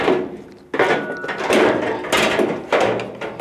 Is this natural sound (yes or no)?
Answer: yes